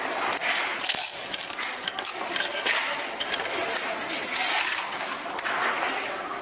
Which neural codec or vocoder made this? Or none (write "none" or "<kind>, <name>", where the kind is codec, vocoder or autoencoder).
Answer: none